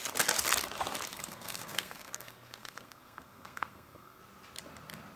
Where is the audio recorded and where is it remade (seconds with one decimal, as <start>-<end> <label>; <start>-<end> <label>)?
0.0-1.1 recorded; 1.1-4.2 remade; 4.2-5.2 recorded